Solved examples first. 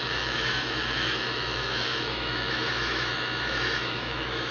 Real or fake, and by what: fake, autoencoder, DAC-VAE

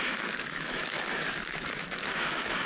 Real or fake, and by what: fake, autoencoder, DAC-VAE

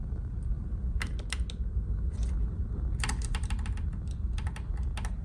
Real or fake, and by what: real